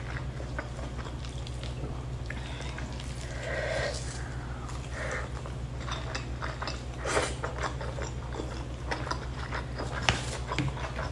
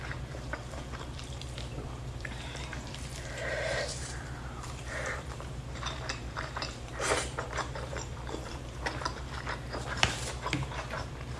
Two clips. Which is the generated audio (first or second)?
second